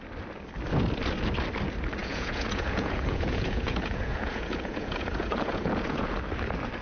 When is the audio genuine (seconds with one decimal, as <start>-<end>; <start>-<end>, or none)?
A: 0.0-2.0; 6.1-6.8